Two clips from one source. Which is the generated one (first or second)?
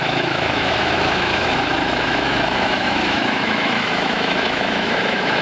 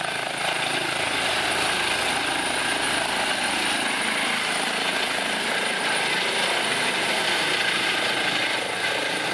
first